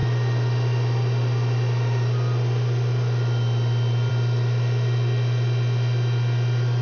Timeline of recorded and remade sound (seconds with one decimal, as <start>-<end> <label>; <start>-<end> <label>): 0.0-6.8 recorded